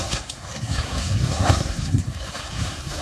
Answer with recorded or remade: remade